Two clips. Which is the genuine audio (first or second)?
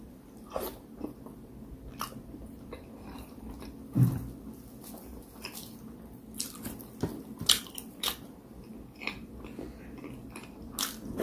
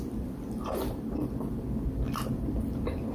first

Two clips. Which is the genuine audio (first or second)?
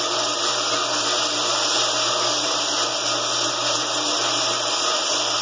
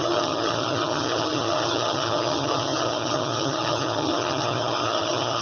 first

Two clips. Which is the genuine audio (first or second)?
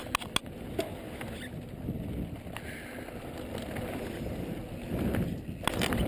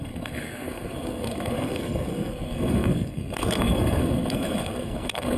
first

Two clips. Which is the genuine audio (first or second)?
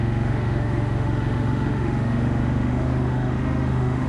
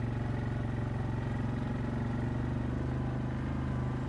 second